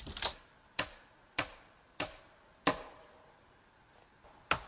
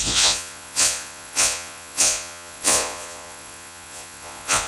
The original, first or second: first